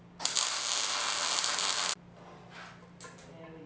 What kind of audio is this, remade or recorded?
recorded